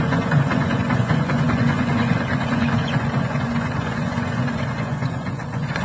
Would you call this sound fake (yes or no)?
yes